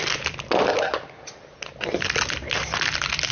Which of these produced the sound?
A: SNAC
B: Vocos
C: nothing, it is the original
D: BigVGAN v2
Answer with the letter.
C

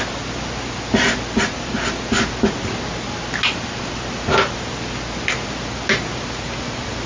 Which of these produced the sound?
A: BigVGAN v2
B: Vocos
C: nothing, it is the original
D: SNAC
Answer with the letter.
C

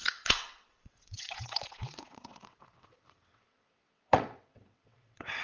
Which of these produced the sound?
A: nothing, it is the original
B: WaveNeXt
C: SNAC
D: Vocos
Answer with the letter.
B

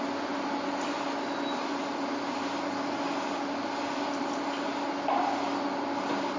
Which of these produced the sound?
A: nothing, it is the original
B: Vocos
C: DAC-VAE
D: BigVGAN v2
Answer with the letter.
A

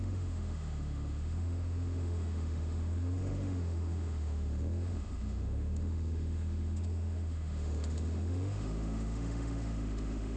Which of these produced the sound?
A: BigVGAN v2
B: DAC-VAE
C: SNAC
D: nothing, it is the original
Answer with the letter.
B